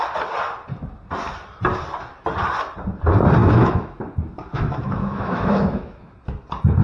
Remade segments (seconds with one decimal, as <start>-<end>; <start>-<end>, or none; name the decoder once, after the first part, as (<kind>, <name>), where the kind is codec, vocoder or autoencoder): 3.4-4.0 (autoencoder, DAC-VAE); 4.4-6.1